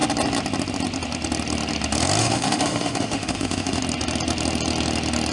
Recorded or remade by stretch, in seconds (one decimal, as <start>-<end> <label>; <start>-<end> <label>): 0.0-2.2 recorded; 2.2-3.8 remade; 3.8-5.3 recorded